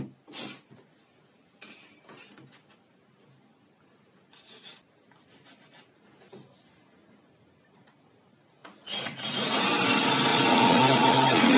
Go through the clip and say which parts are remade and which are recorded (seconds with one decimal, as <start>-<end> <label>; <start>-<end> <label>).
0.0-8.6 recorded; 8.6-9.6 remade; 9.6-10.3 recorded; 10.3-11.6 remade